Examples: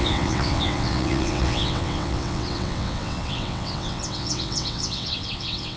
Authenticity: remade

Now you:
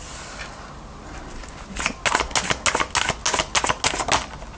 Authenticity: recorded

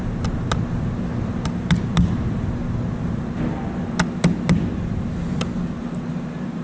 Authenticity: recorded